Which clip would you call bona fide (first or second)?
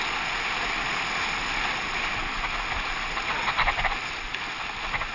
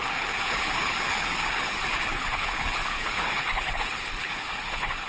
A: first